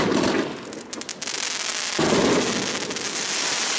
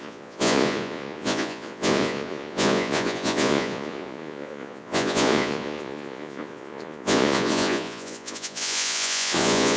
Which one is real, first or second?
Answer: first